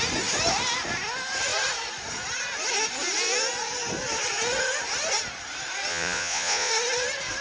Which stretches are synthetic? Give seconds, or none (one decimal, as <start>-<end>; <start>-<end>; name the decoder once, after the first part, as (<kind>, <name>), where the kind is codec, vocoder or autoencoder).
5.9-6.7 (vocoder, Vocos)